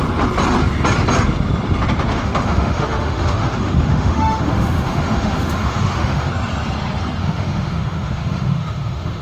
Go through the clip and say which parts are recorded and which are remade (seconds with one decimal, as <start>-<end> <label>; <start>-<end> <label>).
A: 0.0-2.1 recorded; 2.1-6.3 remade; 6.3-7.2 recorded; 7.2-9.2 remade